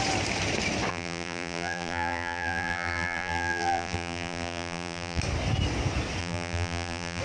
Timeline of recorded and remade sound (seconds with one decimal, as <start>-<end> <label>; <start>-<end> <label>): 0.0-0.9 recorded; 0.9-5.2 remade; 5.2-6.2 recorded; 6.2-7.2 remade